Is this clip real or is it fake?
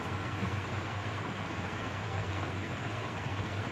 fake